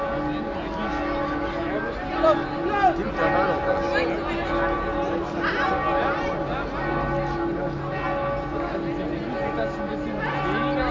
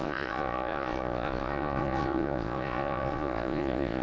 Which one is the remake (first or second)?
second